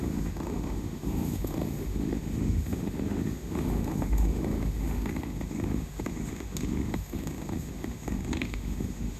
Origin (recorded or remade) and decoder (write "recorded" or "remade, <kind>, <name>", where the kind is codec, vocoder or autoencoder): remade, autoencoder, DAC-VAE